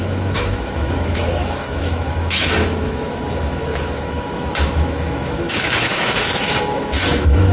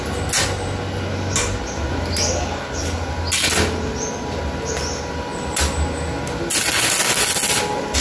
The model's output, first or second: first